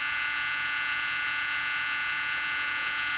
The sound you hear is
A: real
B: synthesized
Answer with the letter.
B